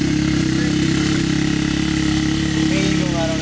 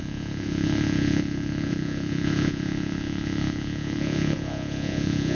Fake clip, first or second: second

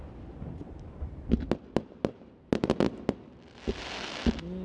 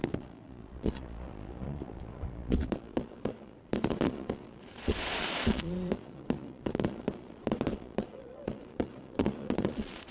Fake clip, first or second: second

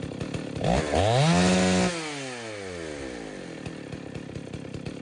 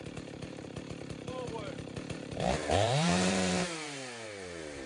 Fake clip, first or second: second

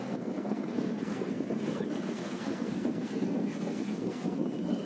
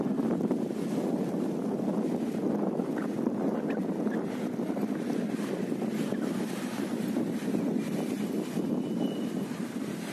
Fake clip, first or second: first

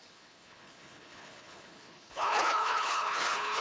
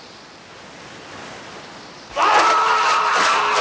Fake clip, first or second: first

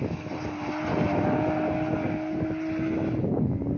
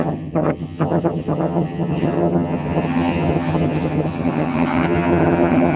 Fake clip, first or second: second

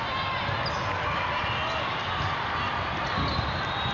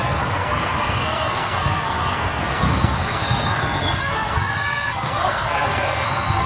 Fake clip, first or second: second